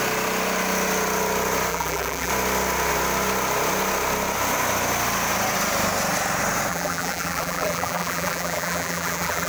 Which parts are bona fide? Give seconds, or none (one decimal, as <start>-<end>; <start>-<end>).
0.0-1.7; 2.3-6.7